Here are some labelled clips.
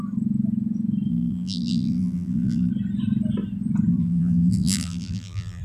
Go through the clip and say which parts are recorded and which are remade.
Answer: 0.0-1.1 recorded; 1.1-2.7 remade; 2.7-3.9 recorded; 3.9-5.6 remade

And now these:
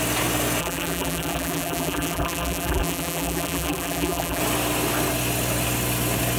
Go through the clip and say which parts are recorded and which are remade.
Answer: 0.0-0.6 recorded; 0.6-4.4 remade; 4.4-6.4 recorded

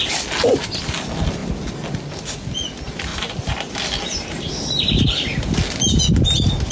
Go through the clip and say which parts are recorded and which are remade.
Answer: 0.0-3.1 recorded; 3.1-3.7 remade; 3.7-6.7 recorded

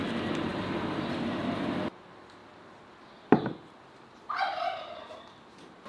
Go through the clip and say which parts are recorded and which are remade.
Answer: 0.0-5.9 recorded

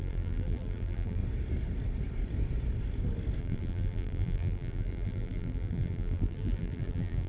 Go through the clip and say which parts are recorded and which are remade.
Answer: 0.0-1.2 remade; 1.2-3.4 recorded; 3.4-7.3 remade

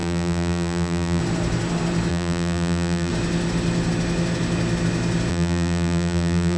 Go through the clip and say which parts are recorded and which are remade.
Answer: 0.0-1.2 remade; 1.2-2.1 recorded; 2.1-3.1 remade; 3.1-5.3 recorded; 5.3-6.6 remade